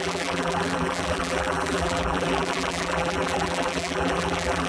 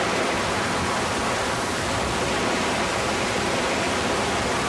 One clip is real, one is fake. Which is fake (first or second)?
first